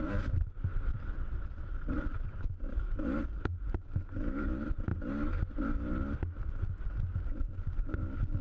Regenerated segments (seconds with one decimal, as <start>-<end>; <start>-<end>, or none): 0.9-2.4